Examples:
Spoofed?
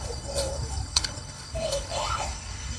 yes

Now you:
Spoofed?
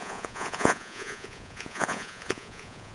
yes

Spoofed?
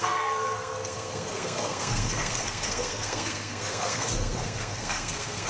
yes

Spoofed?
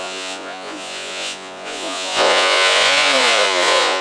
yes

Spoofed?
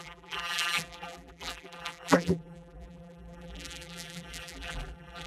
yes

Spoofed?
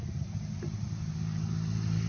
no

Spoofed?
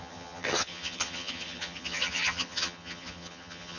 yes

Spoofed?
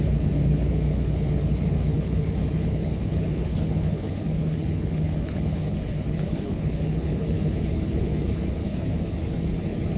yes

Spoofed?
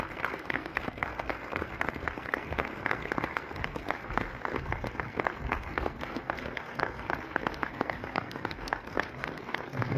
yes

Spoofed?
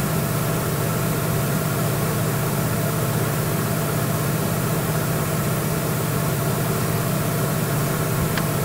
no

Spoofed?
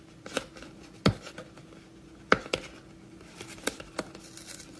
no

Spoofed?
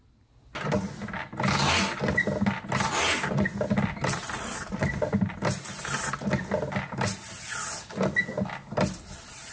no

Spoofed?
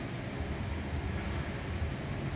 no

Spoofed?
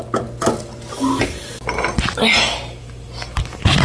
no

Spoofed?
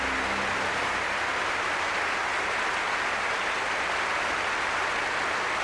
no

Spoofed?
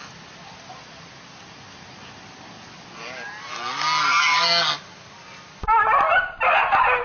no